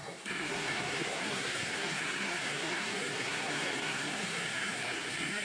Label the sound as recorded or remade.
remade